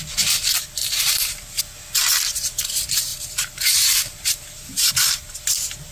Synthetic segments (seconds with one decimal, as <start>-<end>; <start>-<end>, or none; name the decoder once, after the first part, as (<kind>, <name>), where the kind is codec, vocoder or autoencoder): 0.8-1.6 (vocoder, BigVGAN v2); 3.1-4.9